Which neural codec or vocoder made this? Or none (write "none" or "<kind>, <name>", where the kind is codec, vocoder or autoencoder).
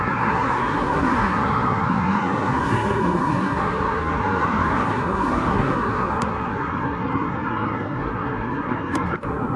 codec, SNAC